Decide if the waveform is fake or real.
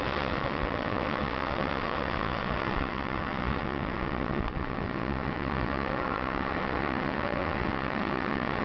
fake